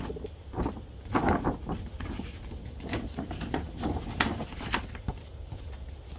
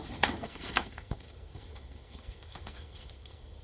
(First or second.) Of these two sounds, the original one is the first